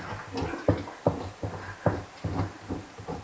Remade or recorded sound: recorded